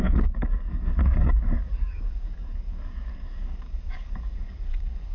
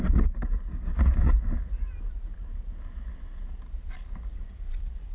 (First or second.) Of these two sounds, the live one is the second